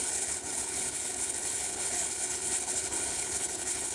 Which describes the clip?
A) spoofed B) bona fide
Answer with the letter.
A